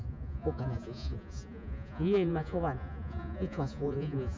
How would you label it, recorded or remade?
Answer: remade